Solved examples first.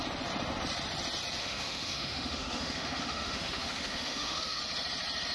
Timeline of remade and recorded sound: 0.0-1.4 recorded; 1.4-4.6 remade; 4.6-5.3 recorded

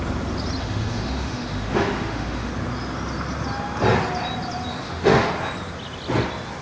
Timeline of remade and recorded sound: 0.0-0.6 recorded; 0.6-2.5 remade; 2.5-4.7 recorded; 4.7-5.3 remade; 5.3-6.6 recorded

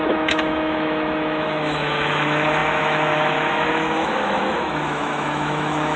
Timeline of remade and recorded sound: 0.0-6.0 remade

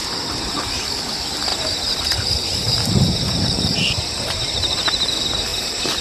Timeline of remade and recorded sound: 0.0-0.7 remade; 0.7-1.5 recorded; 1.5-5.1 remade; 5.1-5.5 recorded; 5.5-6.0 remade

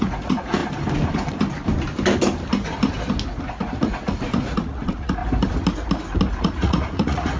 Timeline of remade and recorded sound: 0.0-0.6 remade; 0.6-3.4 recorded; 3.4-5.2 remade; 5.2-6.4 recorded; 6.4-7.4 remade

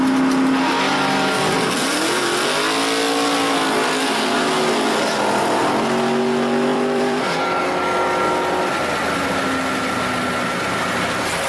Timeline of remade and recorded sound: 0.0-6.7 recorded; 6.7-7.6 remade; 7.6-11.5 recorded

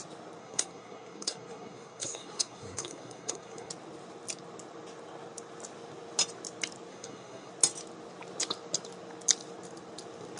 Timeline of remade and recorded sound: 0.0-0.4 recorded; 0.4-3.7 remade; 3.7-6.9 recorded; 6.9-7.5 remade; 7.5-10.4 recorded

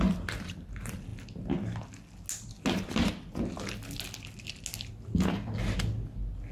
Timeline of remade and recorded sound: 0.0-6.5 recorded